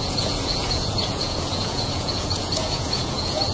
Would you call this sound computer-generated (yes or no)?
yes